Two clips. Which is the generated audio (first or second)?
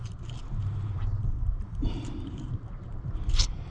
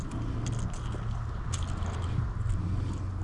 first